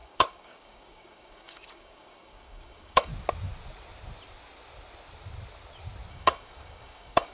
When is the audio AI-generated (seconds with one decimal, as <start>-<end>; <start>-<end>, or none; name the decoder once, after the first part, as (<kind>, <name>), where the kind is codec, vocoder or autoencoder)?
0.0-3.1 (codec, DAC); 6.1-7.3